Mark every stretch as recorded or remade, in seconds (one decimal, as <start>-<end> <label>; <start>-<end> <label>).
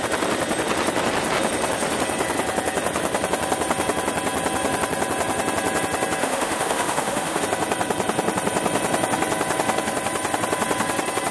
0.0-6.2 recorded; 6.2-7.4 remade; 7.4-11.3 recorded